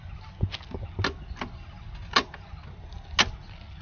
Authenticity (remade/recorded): recorded